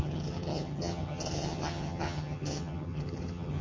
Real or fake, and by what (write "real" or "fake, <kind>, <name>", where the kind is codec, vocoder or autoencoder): fake, vocoder, HiFi-GAN